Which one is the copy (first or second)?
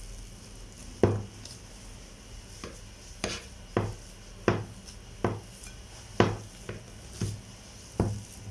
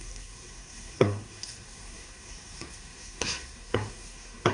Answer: second